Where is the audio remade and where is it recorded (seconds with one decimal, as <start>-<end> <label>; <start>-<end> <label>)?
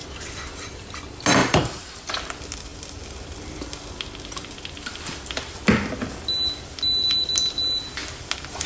0.0-1.4 recorded; 1.4-2.1 remade; 2.1-8.7 recorded